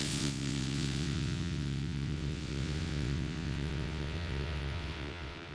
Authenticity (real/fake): fake